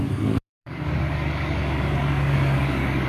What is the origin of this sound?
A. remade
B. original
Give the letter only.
A